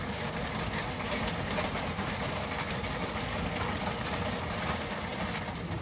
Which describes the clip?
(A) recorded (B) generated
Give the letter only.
A